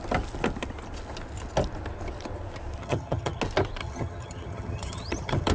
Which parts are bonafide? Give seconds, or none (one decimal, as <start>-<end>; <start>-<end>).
0.0-2.8; 3.4-3.8